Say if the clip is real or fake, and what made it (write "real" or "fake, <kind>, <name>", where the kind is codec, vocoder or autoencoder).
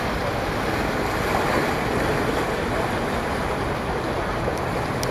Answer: real